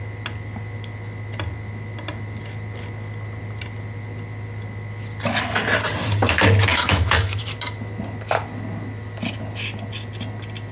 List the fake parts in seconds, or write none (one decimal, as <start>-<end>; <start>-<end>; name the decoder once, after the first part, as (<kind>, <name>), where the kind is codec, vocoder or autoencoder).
6.7-7.4 (autoencoder, DAC-VAE)